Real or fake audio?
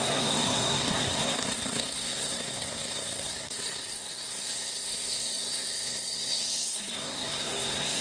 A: fake